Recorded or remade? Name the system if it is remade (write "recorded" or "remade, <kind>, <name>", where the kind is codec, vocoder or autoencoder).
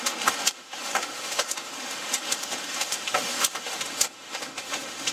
remade, autoencoder, DAC-VAE